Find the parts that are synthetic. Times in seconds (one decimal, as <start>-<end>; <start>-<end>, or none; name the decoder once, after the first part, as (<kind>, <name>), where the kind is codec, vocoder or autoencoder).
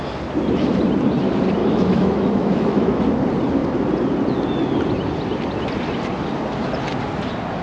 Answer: 1.6-3.0 (autoencoder, DAC-VAE)